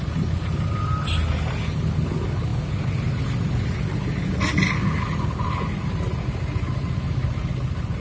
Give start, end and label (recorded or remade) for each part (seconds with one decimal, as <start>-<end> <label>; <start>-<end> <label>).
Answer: 0.0-8.0 recorded